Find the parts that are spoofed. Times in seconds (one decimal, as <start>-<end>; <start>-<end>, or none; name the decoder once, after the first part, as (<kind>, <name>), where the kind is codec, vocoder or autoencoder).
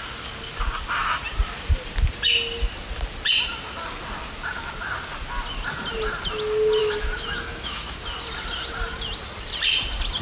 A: 6.8-8.0 (autoencoder, DAC-VAE)